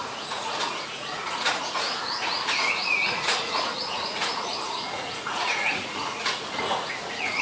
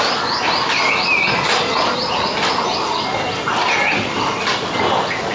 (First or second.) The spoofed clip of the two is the first